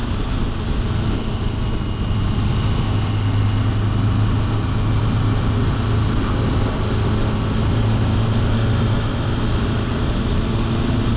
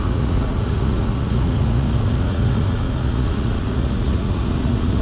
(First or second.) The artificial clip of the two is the second